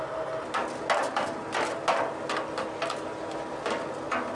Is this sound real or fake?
real